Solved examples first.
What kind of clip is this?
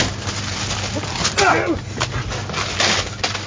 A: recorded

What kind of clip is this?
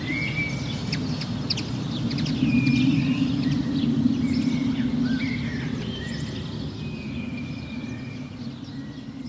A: recorded